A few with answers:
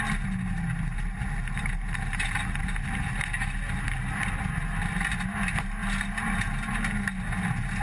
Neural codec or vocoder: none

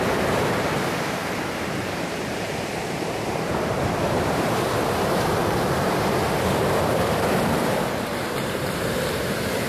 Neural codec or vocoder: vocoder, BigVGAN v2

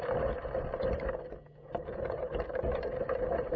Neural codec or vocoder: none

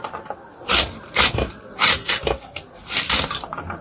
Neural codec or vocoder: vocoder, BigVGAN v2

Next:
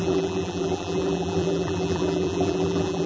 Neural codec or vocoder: vocoder, BigVGAN v2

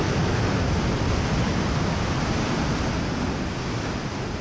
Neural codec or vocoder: none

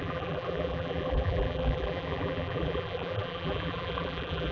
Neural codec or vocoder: vocoder, BigVGAN v2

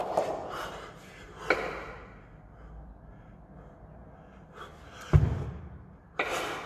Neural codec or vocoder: none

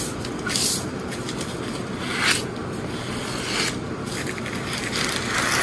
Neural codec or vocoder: vocoder, BigVGAN v2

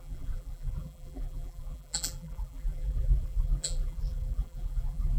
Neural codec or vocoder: vocoder, BigVGAN v2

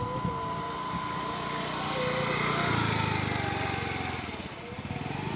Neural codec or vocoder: none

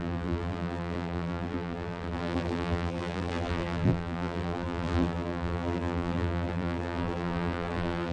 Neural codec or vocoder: vocoder, BigVGAN v2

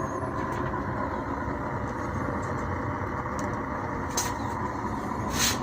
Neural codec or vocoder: none